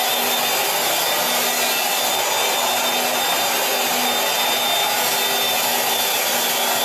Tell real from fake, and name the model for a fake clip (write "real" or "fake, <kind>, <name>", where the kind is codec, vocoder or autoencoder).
real